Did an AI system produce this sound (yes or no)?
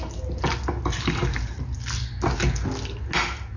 no